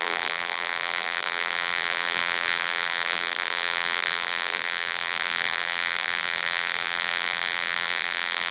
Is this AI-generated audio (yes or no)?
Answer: yes